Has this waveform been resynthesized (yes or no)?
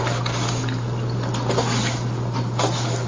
no